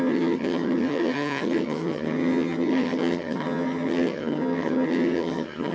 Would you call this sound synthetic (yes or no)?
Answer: yes